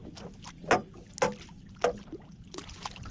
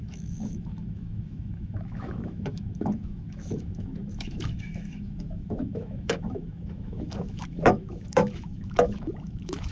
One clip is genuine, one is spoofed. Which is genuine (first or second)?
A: first